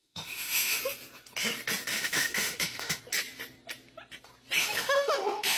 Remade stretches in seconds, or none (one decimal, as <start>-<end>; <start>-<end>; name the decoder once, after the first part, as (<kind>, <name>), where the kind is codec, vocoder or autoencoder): 0.0-0.8 (autoencoder, DAC-VAE); 1.9-3.0; 4.6-5.6

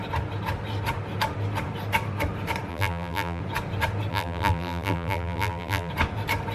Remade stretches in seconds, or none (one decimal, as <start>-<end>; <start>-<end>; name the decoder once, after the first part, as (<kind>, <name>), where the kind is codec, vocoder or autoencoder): 2.7-3.4 (vocoder, BigVGAN v2); 4.1-5.9

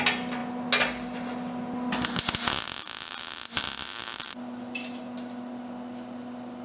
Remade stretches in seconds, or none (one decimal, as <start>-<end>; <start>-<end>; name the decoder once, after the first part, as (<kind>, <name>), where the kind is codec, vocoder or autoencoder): none

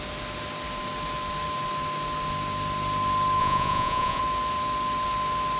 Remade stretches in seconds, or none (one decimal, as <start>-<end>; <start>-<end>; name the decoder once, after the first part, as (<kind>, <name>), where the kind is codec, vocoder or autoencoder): 3.4-4.2 (vocoder, Vocos)

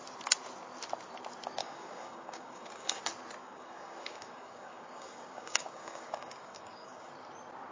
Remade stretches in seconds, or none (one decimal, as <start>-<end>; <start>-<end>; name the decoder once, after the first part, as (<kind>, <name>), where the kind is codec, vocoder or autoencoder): 1.6-3.0 (codec, DAC); 3.4-7.1

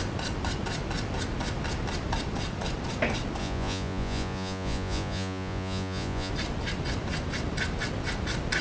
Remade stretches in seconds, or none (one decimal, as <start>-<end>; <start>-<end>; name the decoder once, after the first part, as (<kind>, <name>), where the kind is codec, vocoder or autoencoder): 3.4-6.3 (vocoder, Vocos)

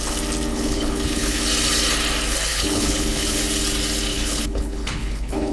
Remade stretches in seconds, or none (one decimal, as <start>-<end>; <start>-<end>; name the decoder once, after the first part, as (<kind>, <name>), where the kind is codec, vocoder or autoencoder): 0.5-1.4 (codec, HILCodec); 2.5-3.4; 4.1-5.5